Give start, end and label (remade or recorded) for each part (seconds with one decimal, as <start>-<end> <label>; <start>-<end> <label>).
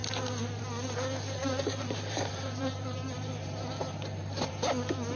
0.0-1.4 recorded; 1.4-4.5 remade; 4.5-5.2 recorded